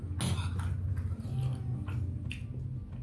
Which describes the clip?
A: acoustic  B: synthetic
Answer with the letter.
A